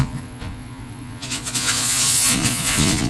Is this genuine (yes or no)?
no